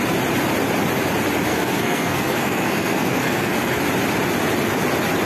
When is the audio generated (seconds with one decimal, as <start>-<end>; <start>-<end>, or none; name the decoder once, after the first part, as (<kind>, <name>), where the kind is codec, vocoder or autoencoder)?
1.5-3.8 (codec, SNAC)